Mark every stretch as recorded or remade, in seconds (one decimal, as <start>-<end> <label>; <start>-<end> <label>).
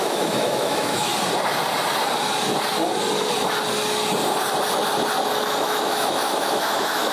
0.0-1.1 remade; 1.1-5.4 recorded; 5.4-7.1 remade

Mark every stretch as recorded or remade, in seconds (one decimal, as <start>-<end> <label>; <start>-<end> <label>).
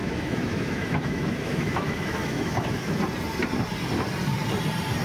0.0-3.0 remade; 3.0-5.0 recorded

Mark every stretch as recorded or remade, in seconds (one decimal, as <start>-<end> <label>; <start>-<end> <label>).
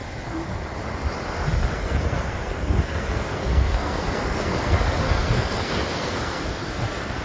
0.0-1.7 recorded; 1.7-7.2 remade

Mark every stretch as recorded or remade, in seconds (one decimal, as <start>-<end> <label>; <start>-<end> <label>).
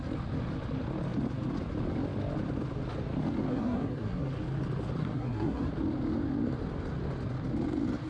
0.0-3.5 recorded; 3.5-4.3 remade; 4.3-5.0 recorded; 5.0-5.7 remade; 5.7-8.1 recorded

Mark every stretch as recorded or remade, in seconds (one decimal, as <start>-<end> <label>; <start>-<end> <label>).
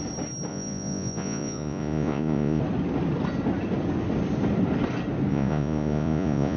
0.0-0.5 recorded; 0.5-2.6 remade; 2.6-5.3 recorded; 5.3-6.6 remade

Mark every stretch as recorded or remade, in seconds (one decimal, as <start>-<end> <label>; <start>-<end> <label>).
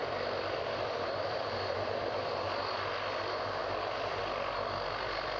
0.0-3.2 remade; 3.2-3.6 recorded; 3.6-4.2 remade; 4.2-5.4 recorded